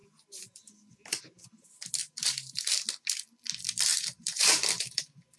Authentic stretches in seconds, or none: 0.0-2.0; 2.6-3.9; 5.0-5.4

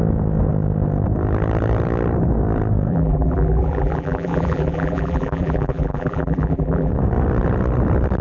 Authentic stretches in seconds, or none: 0.0-2.9; 6.9-8.2

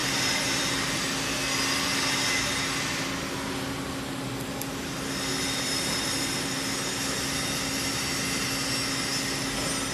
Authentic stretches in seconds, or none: 0.7-9.9

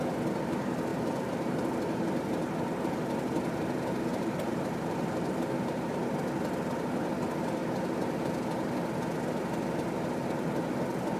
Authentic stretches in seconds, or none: 0.0-0.9; 1.6-4.1; 6.1-11.2

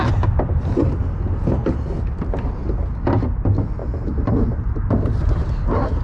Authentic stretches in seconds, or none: 0.0-3.8; 5.5-6.0

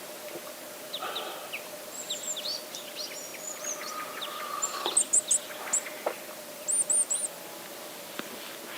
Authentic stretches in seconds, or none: 0.0-8.8

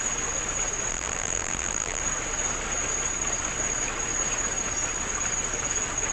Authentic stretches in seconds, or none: 0.0-0.9; 2.0-6.1

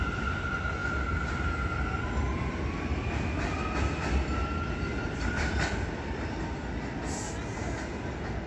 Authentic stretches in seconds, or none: 0.0-4.9; 6.4-8.5